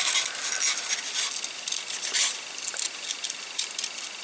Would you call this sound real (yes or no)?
yes